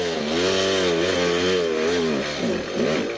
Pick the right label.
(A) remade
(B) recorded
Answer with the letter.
B